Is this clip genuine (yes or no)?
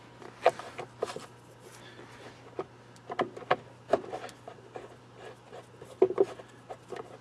yes